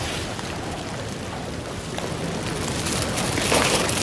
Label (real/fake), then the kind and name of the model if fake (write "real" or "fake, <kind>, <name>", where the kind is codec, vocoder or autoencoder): real